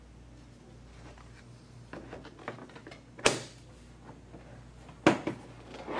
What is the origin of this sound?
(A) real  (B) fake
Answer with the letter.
A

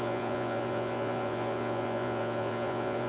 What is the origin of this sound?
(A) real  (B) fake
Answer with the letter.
B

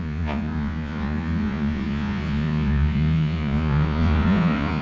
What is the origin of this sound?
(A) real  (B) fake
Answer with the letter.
B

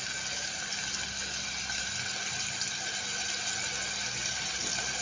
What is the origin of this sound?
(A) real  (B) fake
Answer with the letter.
A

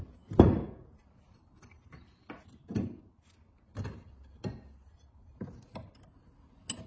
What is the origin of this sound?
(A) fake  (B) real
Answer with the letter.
B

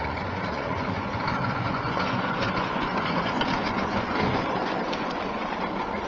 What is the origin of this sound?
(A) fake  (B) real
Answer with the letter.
A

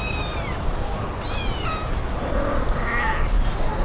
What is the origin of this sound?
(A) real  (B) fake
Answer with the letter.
A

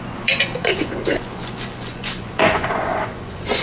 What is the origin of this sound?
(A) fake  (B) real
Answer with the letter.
A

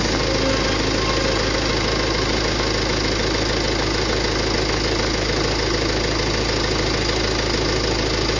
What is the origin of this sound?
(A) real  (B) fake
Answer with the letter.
A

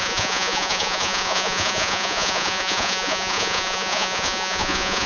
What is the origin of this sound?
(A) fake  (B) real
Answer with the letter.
A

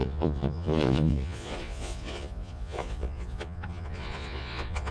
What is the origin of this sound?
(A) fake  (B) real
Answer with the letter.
A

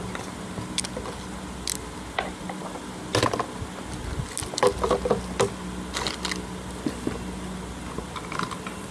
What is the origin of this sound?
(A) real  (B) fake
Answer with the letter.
A